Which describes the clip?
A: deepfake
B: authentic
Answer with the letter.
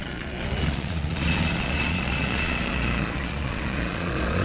A